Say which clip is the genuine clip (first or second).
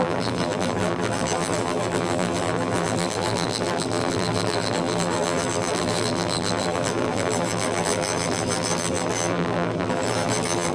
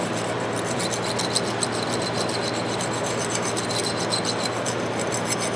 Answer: second